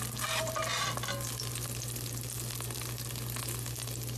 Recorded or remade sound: recorded